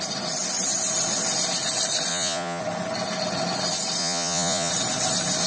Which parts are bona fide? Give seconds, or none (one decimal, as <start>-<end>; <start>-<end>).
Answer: 0.0-2.1; 2.6-4.0; 4.7-5.5